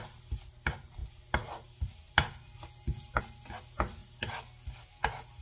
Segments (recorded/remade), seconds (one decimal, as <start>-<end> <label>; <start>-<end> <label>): 0.0-5.4 recorded